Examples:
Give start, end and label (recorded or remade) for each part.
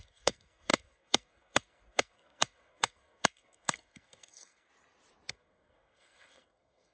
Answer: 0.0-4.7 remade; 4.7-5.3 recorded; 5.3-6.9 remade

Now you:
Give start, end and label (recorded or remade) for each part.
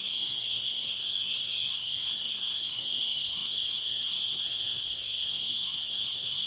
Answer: 0.0-6.5 remade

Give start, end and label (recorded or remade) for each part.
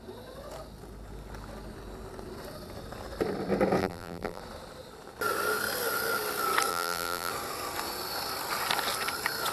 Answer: 0.0-3.8 recorded; 3.8-4.4 remade; 4.4-6.7 recorded; 6.7-7.3 remade; 7.3-9.5 recorded